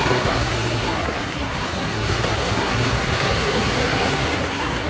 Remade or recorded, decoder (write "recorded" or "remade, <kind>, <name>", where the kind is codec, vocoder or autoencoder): remade, codec, SNAC